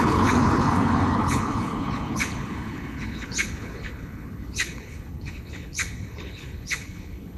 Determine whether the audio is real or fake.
fake